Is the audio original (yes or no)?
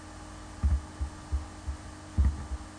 yes